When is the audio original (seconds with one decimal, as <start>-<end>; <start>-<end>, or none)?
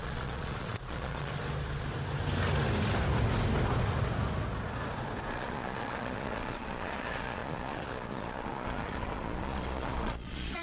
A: 1.3-5.3